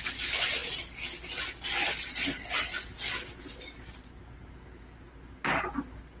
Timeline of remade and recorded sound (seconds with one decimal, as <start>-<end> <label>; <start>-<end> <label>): 0.0-6.2 recorded